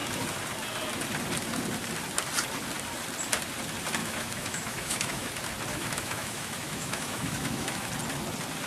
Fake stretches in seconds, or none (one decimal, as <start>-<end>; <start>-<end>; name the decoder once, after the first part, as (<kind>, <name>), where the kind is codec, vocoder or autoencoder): 4.0-5.3 (autoencoder, DAC-VAE); 5.7-7.9